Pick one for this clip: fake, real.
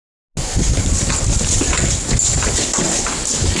real